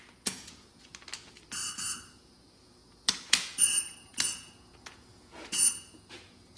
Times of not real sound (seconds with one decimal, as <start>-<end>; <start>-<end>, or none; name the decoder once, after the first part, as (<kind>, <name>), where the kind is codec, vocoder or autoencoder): 0.0-0.9 (vocoder, Vocos); 2.1-6.6